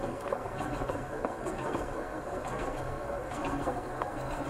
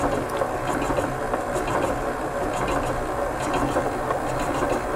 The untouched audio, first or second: second